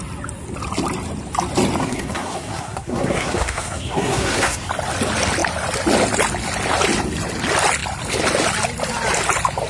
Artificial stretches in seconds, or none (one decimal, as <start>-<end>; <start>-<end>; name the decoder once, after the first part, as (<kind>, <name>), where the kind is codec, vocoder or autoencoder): 1.8-4.7 (codec, SNAC)